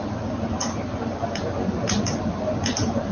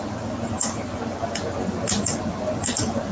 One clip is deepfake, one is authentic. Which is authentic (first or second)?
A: second